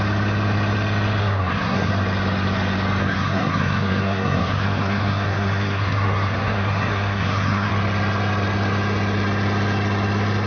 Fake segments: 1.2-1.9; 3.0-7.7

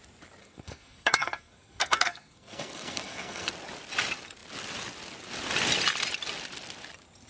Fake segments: 0.4-3.5